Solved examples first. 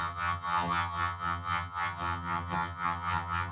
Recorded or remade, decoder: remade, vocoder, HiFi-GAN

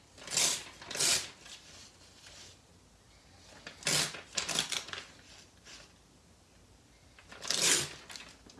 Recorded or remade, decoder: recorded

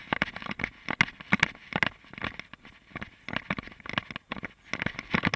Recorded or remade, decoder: recorded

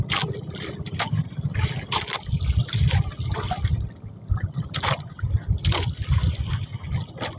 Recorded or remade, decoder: recorded